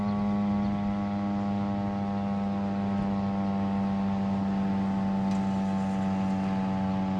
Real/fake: real